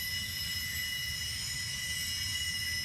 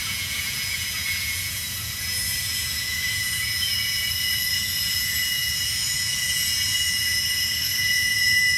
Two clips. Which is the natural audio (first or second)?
first